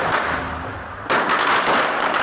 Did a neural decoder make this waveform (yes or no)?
no